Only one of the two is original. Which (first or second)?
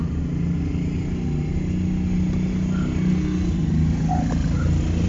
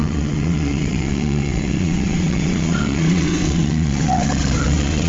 first